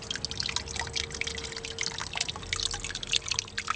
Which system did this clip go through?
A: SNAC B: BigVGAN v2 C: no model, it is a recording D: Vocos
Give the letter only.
C